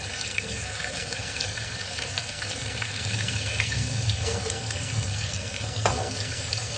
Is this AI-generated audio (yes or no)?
yes